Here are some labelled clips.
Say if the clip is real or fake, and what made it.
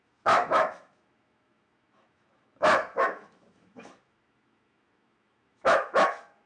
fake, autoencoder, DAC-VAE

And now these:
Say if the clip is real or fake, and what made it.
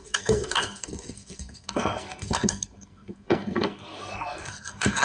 fake, codec, SNAC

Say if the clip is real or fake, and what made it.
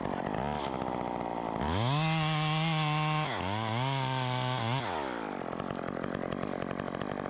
real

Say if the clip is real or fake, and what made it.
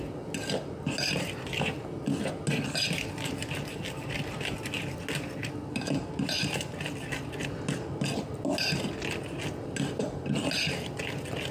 real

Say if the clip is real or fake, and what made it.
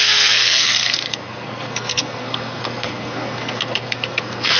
fake, codec, SNAC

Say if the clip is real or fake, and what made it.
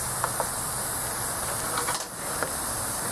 real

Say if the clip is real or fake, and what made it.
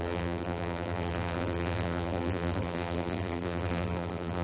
fake, vocoder, BigVGAN v2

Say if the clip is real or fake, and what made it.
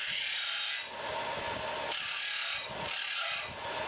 real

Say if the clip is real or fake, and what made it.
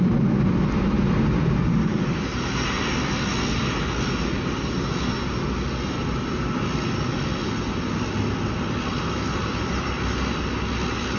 real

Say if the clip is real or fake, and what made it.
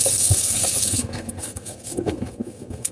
fake, codec, SNAC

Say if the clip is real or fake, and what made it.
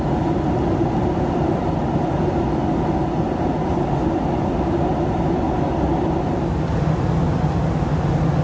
real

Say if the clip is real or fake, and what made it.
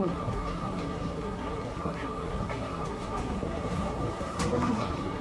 fake, codec, SNAC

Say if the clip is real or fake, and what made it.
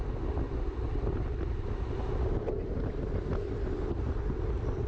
real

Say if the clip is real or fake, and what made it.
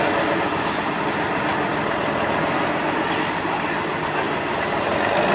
real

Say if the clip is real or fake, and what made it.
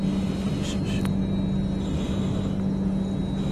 real